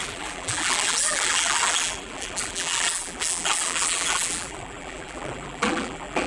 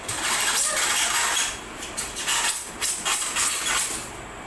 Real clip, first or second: second